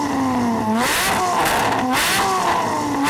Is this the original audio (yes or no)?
yes